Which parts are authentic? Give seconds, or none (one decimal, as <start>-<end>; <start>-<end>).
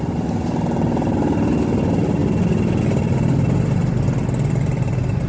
0.0-5.3